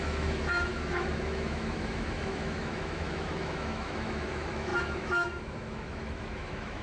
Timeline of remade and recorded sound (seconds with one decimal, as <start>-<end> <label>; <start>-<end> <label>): 0.0-6.8 remade